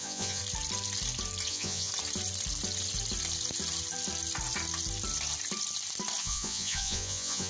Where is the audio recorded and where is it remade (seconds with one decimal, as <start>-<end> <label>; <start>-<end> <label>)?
0.0-0.4 remade; 0.4-1.5 recorded; 1.5-1.9 remade; 1.9-6.2 recorded; 6.2-7.5 remade